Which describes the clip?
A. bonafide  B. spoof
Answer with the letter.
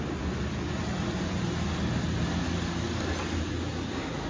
A